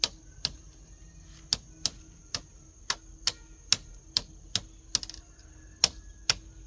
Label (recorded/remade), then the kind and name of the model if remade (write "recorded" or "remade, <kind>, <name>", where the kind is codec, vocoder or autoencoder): recorded